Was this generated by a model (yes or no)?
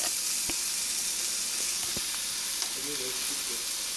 no